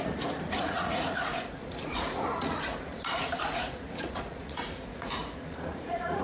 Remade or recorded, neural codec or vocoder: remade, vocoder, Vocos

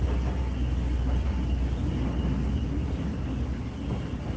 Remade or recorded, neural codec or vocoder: recorded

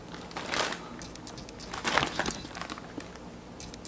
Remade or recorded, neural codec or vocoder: recorded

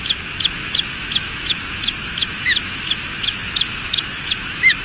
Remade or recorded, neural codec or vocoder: remade, autoencoder, DAC-VAE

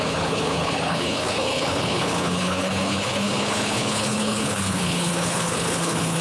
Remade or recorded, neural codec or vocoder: remade, codec, HILCodec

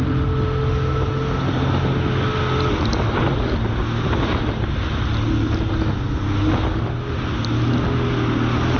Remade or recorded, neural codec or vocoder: recorded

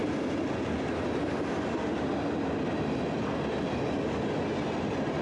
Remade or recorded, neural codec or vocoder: recorded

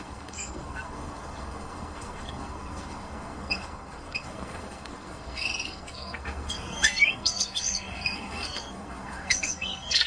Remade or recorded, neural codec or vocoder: remade, codec, SNAC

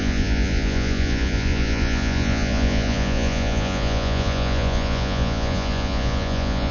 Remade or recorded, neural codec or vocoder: remade, vocoder, Vocos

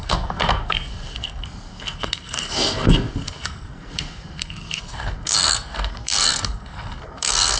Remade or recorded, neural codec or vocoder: remade, codec, SNAC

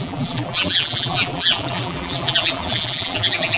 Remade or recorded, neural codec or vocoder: remade, vocoder, BigVGAN v2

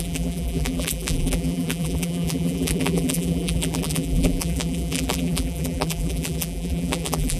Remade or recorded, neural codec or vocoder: remade, vocoder, BigVGAN v2